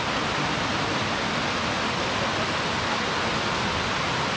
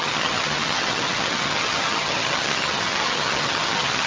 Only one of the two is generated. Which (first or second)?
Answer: second